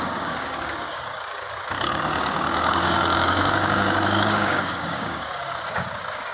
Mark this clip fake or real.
fake